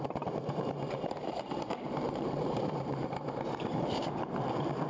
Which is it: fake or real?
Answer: fake